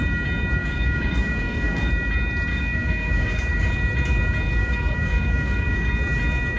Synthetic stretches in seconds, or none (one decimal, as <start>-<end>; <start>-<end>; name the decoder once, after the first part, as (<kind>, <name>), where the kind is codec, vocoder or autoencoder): 0.6-1.9 (codec, DAC); 2.5-3.7; 4.6-5.9